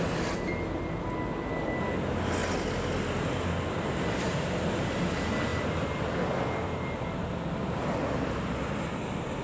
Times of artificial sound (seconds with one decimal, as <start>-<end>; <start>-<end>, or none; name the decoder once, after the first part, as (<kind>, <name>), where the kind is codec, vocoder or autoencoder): none